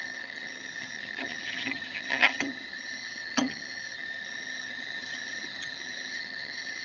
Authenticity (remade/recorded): remade